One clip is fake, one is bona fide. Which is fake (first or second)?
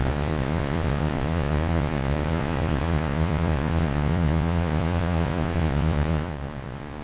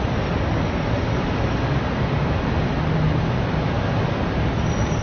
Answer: first